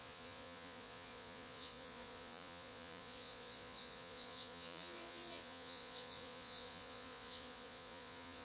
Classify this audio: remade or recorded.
remade